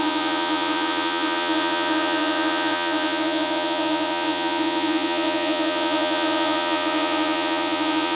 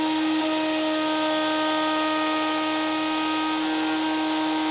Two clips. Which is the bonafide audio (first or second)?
second